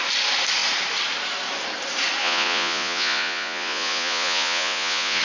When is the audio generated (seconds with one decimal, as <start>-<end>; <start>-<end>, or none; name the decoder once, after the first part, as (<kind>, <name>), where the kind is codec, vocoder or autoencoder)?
2.2-5.2 (vocoder, Vocos)